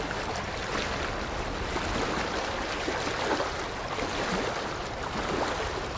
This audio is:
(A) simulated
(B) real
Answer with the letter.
B